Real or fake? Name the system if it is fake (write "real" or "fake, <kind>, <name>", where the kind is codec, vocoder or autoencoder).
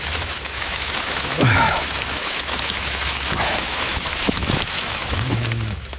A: fake, autoencoder, DAC-VAE